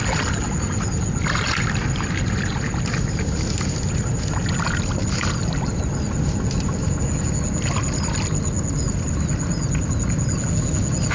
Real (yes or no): yes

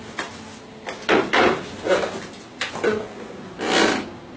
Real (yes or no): yes